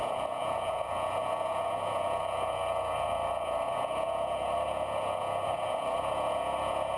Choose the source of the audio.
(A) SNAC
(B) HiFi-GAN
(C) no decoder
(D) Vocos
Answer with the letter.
D